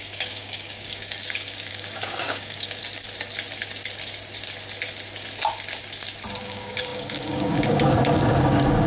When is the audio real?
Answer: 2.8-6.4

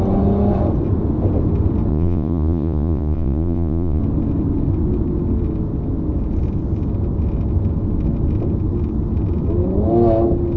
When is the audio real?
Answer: 0.0-1.9; 4.0-10.6